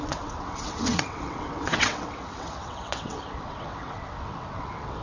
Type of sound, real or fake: fake